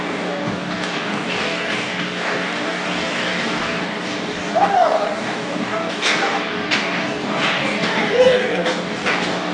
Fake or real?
fake